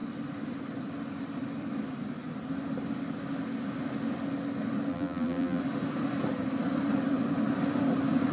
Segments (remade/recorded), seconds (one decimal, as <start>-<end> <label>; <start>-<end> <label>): 0.0-4.9 recorded; 4.9-5.6 remade; 5.6-8.3 recorded